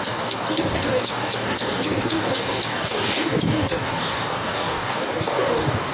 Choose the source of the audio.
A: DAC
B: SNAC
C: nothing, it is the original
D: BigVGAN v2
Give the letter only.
A